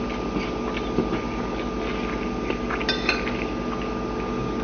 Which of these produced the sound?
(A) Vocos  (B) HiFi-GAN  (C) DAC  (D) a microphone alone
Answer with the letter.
D